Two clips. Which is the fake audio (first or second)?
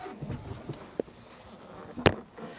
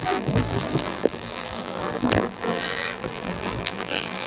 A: second